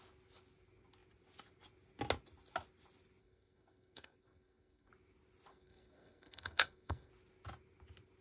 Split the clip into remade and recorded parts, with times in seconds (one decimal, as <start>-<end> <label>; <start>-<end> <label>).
0.0-3.2 recorded; 3.2-4.9 remade; 4.9-5.5 recorded; 5.5-7.1 remade; 7.1-8.2 recorded

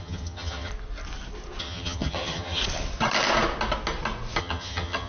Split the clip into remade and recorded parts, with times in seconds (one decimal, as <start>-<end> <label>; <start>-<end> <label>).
0.0-0.7 remade; 0.7-1.6 recorded; 1.6-2.6 remade; 2.6-4.4 recorded; 4.4-5.1 remade

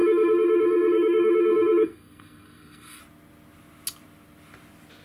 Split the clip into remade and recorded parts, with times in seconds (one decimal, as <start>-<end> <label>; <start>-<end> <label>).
0.0-3.0 remade; 3.0-5.0 recorded